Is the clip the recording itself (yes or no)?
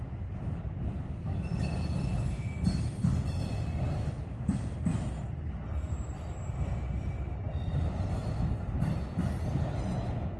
yes